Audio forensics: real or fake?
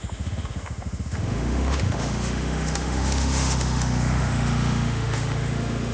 fake